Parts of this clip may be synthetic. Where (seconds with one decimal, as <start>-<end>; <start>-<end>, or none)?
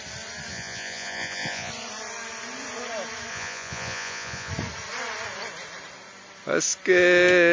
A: 0.5-1.7; 3.3-4.5